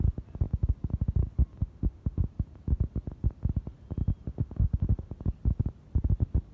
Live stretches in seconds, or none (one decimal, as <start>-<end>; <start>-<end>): 0.0-1.6; 2.3-4.3; 5.1-6.5